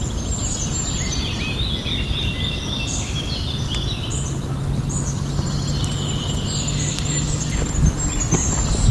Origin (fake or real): real